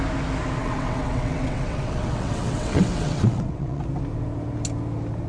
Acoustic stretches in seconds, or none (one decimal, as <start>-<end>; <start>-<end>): 0.0-0.6; 3.8-5.3